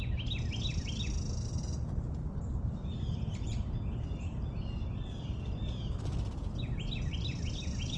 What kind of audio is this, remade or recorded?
recorded